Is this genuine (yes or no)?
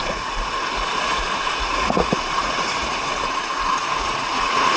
no